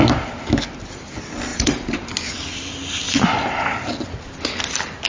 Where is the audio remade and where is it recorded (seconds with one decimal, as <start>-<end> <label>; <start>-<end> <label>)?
0.0-1.5 recorded; 1.5-2.1 remade; 2.1-5.1 recorded